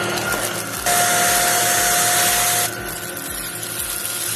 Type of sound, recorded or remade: recorded